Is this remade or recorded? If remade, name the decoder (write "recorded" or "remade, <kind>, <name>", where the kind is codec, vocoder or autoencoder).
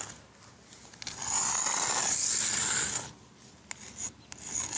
recorded